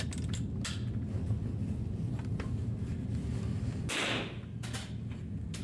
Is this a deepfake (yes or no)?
no